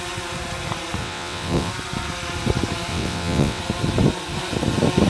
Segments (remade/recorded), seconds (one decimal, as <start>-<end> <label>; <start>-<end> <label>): 0.0-1.0 recorded; 1.0-1.7 remade; 1.7-2.9 recorded; 2.9-3.6 remade; 3.6-5.1 recorded